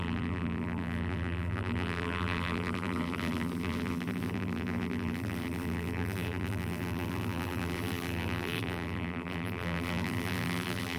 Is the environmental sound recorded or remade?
remade